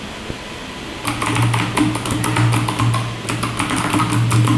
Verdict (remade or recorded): recorded